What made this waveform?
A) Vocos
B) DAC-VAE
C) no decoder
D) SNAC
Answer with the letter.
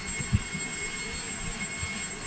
C